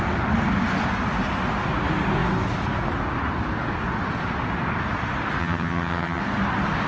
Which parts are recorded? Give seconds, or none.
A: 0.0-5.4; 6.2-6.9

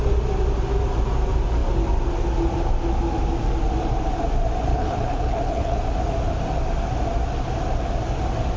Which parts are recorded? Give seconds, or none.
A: 0.0-4.7; 5.8-8.6

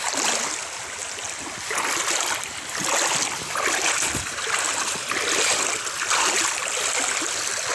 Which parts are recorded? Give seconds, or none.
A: 0.0-7.7

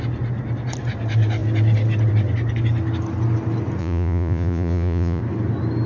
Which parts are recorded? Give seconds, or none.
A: 0.0-3.8; 5.2-5.9

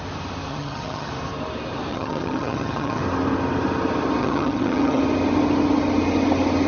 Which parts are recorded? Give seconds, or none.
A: 0.0-0.5; 1.1-1.9; 3.0-4.2; 5.0-6.7

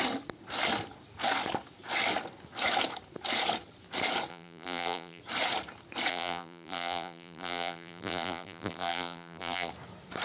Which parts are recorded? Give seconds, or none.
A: 0.0-4.3; 5.2-6.1; 9.7-10.2